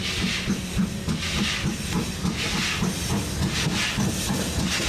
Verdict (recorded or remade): recorded